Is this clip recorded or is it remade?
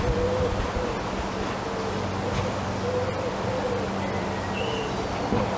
recorded